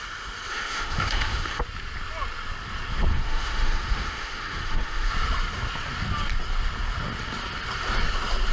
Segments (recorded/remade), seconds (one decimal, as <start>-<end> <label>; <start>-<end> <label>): 0.0-0.5 recorded; 0.5-1.6 remade; 1.6-3.1 recorded; 3.1-5.1 remade; 5.1-8.5 recorded